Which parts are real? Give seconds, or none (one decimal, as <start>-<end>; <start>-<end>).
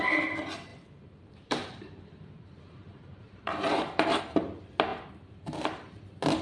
0.0-0.7; 4.2-4.9; 6.0-6.4